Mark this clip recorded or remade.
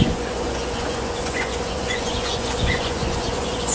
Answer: remade